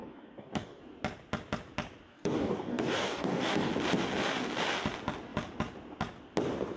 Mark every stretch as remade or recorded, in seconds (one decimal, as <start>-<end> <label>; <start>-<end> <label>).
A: 0.0-0.8 remade; 0.8-2.1 recorded; 2.1-3.7 remade; 3.7-6.8 recorded